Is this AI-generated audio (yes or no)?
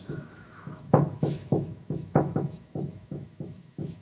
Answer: yes